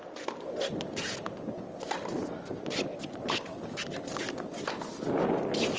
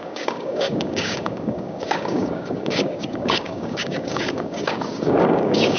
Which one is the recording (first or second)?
first